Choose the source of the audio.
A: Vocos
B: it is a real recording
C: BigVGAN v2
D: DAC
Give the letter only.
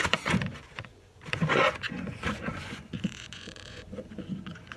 A